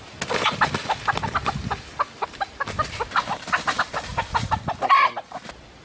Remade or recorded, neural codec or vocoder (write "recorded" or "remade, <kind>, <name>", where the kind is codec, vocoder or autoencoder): recorded